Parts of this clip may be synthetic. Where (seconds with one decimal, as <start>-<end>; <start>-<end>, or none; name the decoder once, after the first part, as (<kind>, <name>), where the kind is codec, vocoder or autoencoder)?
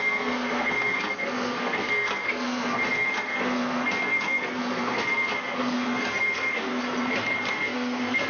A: 0.0-6.7 (codec, SNAC); 7.5-8.3